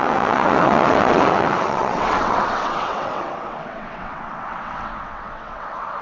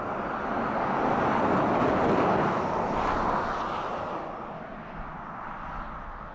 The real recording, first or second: second